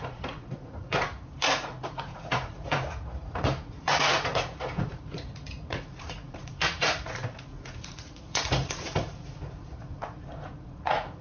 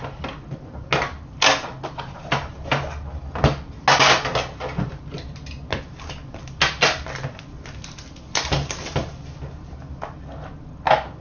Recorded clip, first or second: second